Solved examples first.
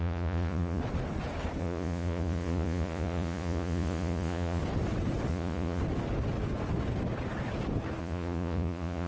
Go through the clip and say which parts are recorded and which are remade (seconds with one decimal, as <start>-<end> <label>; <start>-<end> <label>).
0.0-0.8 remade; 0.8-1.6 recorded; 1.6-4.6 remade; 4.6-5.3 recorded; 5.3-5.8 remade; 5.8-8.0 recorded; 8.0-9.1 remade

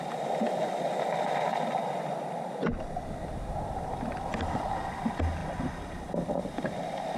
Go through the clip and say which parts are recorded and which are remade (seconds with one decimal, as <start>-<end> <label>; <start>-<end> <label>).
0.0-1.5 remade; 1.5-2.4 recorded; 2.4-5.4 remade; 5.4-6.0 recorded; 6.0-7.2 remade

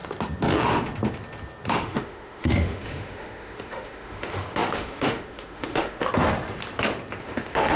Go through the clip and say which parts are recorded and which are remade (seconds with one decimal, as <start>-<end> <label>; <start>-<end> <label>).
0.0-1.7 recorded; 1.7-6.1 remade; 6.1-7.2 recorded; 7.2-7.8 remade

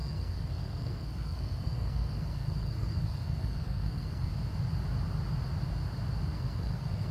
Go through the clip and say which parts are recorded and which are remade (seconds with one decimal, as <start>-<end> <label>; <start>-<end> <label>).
0.0-4.3 remade; 4.3-6.3 recorded; 6.3-7.1 remade

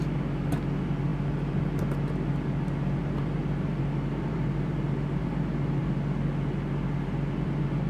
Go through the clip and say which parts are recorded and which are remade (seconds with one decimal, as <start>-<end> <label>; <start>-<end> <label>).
0.0-7.9 recorded